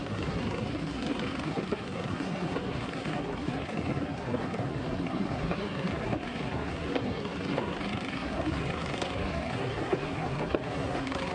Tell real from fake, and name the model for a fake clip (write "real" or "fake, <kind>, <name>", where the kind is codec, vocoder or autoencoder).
fake, codec, SNAC